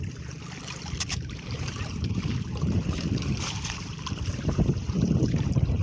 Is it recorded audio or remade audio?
remade